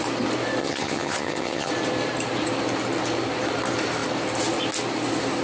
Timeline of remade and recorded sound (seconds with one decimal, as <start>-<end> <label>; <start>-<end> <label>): 0.0-0.6 recorded; 0.6-1.7 remade; 1.7-5.4 recorded